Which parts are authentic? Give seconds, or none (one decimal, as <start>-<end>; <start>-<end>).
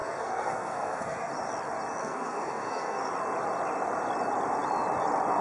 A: 1.3-2.0; 3.1-5.4